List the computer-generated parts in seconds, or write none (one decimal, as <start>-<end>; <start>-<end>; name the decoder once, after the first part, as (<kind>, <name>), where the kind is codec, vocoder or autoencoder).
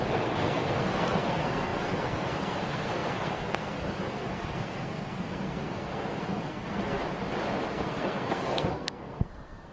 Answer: 0.0-7.0 (codec, SNAC); 7.7-9.7